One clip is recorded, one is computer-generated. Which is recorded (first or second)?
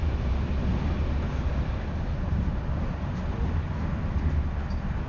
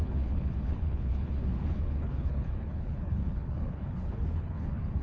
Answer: first